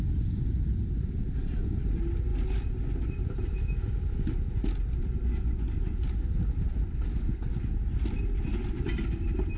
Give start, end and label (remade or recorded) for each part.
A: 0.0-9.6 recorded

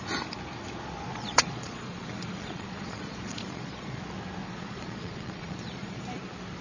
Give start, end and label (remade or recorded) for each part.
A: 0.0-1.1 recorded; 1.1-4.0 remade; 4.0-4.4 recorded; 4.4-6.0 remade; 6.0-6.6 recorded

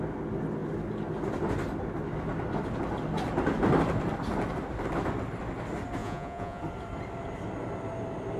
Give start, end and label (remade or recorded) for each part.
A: 0.0-6.0 recorded; 6.0-6.6 remade; 6.6-8.4 recorded